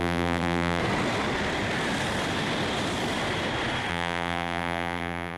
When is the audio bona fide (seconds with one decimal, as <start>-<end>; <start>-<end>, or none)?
0.8-3.9